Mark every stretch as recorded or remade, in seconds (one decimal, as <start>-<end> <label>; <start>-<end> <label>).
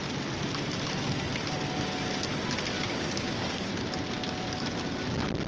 0.0-2.9 recorded; 2.9-3.7 remade; 3.7-5.5 recorded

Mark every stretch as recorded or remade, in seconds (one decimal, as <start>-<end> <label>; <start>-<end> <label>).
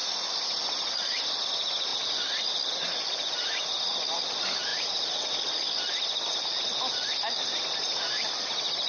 0.0-1.9 recorded; 1.9-2.4 remade; 2.4-4.7 recorded; 4.7-8.4 remade; 8.4-8.9 recorded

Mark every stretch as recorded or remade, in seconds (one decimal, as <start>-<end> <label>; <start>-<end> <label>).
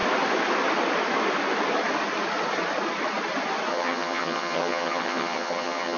0.0-3.7 recorded; 3.7-6.0 remade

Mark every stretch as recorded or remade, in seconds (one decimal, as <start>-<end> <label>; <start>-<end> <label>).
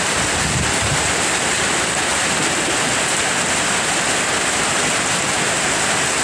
0.0-6.2 recorded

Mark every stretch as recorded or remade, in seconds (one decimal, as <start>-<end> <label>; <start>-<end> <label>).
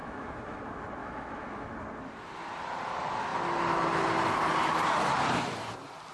0.0-0.6 remade; 0.6-1.0 recorded; 1.0-1.7 remade; 1.7-6.1 recorded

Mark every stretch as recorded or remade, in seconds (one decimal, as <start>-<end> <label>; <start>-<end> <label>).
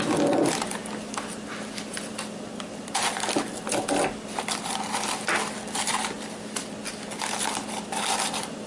0.0-8.7 recorded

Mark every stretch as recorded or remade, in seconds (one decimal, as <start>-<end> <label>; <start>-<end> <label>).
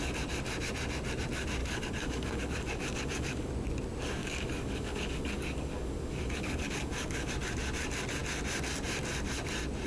0.0-1.6 recorded; 1.6-3.5 remade; 3.5-4.2 recorded; 4.2-7.3 remade; 7.3-9.9 recorded